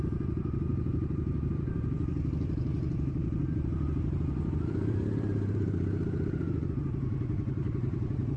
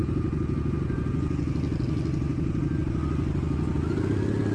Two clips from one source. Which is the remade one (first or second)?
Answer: first